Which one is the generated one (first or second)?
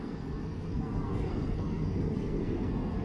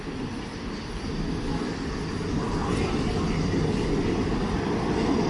first